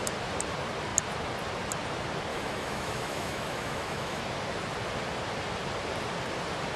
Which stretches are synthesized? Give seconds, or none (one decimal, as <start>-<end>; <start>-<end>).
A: 2.3-4.2